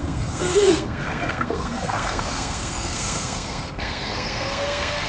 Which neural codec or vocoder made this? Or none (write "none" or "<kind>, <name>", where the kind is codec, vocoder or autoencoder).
codec, SNAC